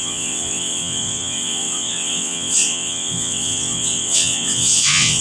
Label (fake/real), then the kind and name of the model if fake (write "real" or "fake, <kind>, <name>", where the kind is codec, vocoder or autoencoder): fake, vocoder, WaveNeXt